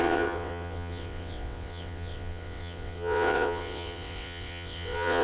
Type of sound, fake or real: fake